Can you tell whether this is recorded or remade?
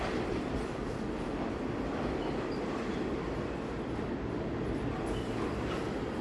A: recorded